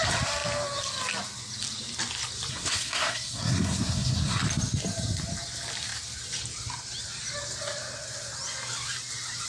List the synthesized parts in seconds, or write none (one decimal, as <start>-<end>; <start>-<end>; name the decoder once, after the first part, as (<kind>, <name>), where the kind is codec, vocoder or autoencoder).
2.5-4.4 (codec, SNAC)